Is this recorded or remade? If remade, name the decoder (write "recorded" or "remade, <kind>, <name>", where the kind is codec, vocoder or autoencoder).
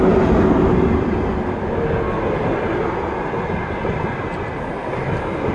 recorded